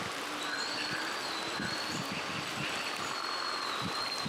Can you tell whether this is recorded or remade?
recorded